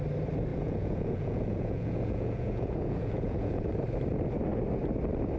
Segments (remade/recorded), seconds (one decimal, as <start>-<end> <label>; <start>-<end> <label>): 0.0-0.5 recorded; 0.5-3.7 remade; 3.7-5.4 recorded